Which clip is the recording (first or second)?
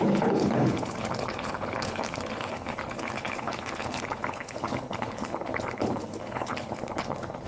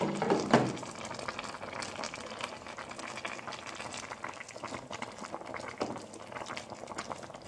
second